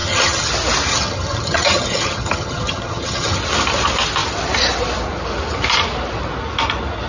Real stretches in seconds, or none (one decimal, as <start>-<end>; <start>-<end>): 0.5-0.9; 3.4-7.1